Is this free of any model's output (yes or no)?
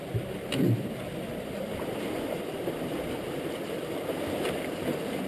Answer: no